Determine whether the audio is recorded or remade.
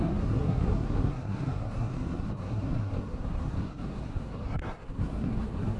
remade